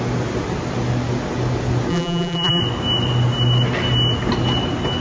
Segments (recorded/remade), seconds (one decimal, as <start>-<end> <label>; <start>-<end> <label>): 0.0-1.9 recorded; 1.9-2.6 remade; 2.6-5.0 recorded